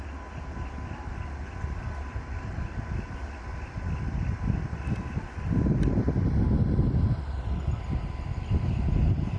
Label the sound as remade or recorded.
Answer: recorded